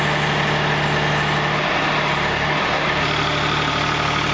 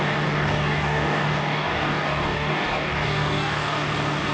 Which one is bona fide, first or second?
first